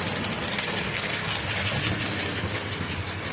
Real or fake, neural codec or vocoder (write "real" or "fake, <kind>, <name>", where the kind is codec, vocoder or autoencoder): real